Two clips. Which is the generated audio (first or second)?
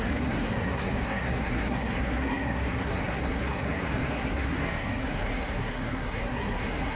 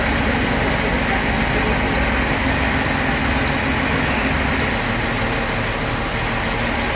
first